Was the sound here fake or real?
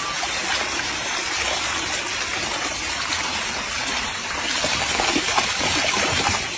real